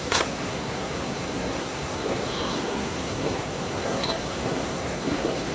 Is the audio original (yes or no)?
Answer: no